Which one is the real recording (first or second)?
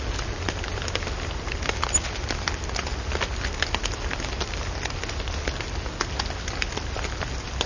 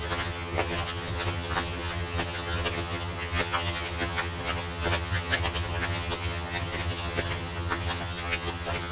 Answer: first